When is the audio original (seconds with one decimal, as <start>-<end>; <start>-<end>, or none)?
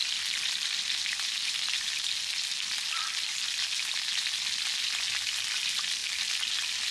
0.0-6.9